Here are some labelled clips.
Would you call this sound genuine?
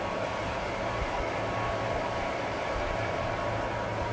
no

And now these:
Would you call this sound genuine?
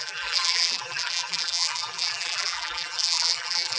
no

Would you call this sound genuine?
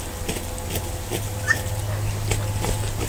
yes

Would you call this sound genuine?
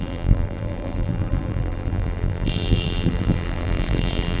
no